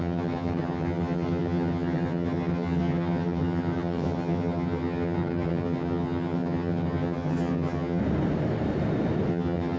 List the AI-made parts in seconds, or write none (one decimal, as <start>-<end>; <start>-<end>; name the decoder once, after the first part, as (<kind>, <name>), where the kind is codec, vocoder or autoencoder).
0.0-8.0 (vocoder, HiFi-GAN); 9.3-9.8